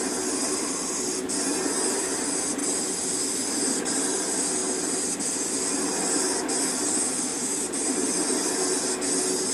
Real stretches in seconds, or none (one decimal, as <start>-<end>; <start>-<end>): 0.0-0.4; 1.1-7.3; 8.1-9.5